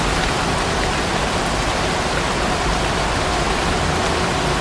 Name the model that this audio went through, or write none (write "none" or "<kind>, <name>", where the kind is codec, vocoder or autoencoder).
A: none